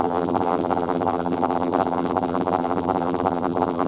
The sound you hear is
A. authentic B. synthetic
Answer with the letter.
B